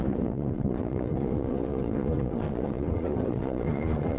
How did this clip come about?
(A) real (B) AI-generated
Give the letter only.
B